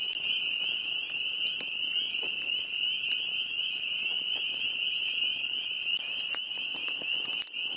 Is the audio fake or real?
real